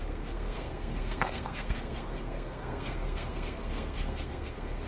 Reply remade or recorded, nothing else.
remade